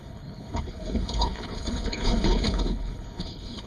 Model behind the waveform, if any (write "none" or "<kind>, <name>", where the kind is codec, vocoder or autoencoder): codec, HILCodec